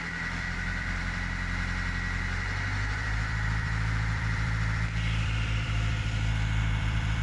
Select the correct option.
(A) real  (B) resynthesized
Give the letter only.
B